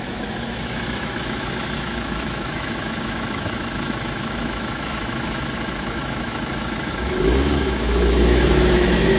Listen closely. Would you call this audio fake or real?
fake